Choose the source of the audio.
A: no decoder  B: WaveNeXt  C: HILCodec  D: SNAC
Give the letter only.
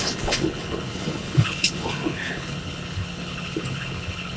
C